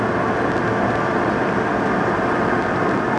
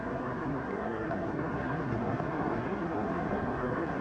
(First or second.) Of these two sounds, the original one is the first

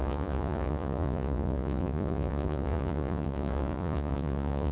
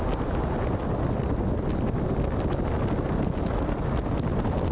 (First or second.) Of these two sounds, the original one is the second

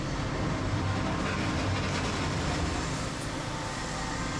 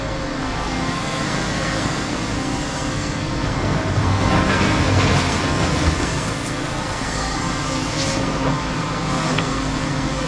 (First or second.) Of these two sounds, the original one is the first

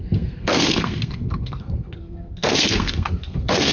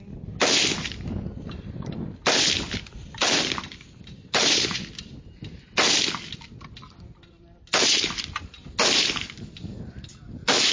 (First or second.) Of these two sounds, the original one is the second